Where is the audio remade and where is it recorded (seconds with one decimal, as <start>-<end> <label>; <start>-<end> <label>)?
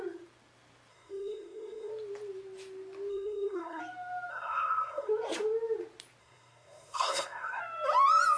0.0-0.9 recorded; 0.9-1.9 remade; 1.9-3.1 recorded; 3.1-3.8 remade; 3.8-4.3 recorded; 4.3-5.1 remade; 5.1-6.2 recorded; 6.2-7.6 remade; 7.6-8.4 recorded